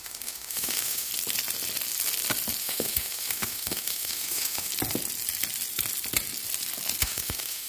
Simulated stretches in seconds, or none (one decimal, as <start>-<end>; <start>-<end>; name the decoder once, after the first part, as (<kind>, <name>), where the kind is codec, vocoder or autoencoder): 0.0-1.1 (autoencoder, DAC-VAE); 2.6-4.7; 7.0-7.7